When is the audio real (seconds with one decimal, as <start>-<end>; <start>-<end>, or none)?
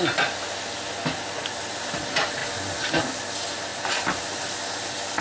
0.0-5.2